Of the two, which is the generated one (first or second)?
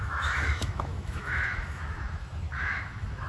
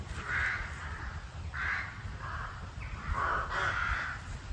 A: first